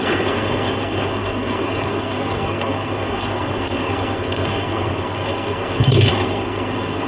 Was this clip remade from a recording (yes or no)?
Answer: yes